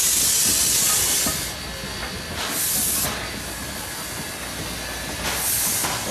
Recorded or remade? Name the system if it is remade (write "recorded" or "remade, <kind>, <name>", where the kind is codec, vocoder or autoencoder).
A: recorded